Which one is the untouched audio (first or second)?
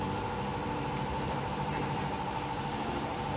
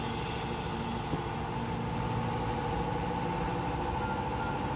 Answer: second